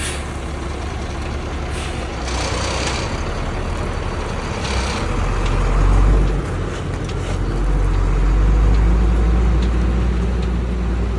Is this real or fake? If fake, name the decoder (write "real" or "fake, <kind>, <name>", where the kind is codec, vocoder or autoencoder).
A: real